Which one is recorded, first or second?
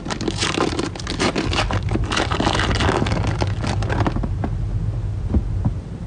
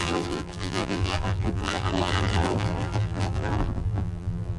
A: first